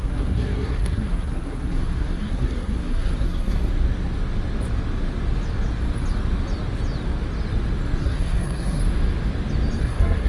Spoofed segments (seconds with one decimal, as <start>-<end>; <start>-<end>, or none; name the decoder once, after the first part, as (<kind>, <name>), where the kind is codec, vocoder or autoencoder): 0.0-3.7 (codec, SNAC); 8.0-8.8; 9.8-10.3